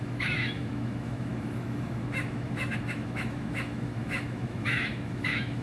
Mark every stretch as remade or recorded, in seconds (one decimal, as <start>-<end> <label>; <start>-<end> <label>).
0.0-5.6 remade